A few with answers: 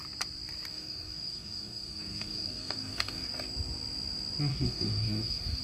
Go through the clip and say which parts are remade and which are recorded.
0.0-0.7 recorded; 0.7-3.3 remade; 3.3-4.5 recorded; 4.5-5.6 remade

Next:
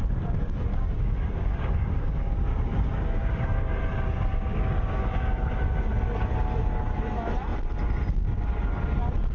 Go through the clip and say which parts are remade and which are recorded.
0.0-0.7 recorded; 0.7-3.7 remade; 3.7-4.3 recorded; 4.3-5.4 remade; 5.4-9.3 recorded

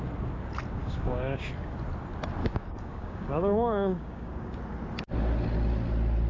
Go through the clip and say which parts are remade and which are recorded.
0.0-0.8 recorded; 0.8-1.5 remade; 1.5-2.4 recorded; 2.4-4.5 remade; 4.5-6.3 recorded

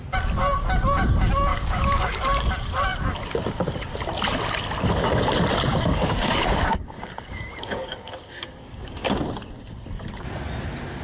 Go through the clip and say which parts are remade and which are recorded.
0.0-1.5 recorded; 1.5-2.5 remade; 2.5-5.7 recorded; 5.7-9.2 remade; 9.2-11.0 recorded

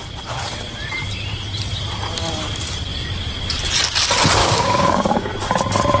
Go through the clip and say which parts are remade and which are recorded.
0.0-4.4 recorded; 4.4-5.3 remade; 5.3-6.0 recorded